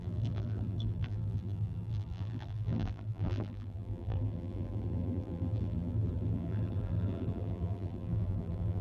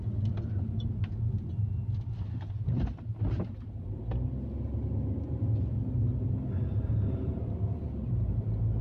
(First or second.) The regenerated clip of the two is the first